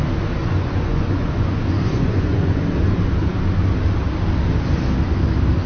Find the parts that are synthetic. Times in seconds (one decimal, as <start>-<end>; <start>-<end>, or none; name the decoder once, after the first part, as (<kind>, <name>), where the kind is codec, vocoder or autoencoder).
0.4-2.7 (vocoder, Vocos)